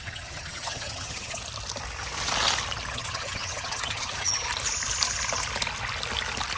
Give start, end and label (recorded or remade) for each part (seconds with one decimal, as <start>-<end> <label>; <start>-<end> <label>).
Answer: 0.0-1.4 remade; 1.4-2.9 recorded; 2.9-4.5 remade; 4.5-6.6 recorded

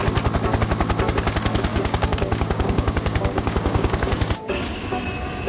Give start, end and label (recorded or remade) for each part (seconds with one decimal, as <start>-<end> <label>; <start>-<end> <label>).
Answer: 0.0-1.7 recorded; 1.7-5.0 remade; 5.0-5.5 recorded